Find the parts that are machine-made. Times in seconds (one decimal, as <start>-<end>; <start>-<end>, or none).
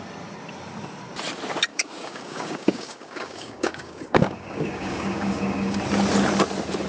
1.7-5.8